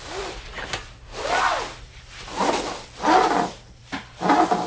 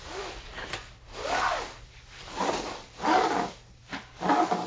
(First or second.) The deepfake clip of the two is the second